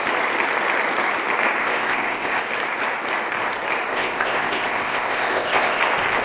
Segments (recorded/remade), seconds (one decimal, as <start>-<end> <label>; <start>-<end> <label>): 0.0-1.6 recorded; 1.6-2.4 remade; 2.4-3.9 recorded; 3.9-5.8 remade; 5.8-6.2 recorded